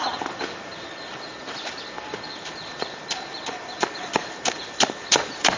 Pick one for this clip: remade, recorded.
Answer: recorded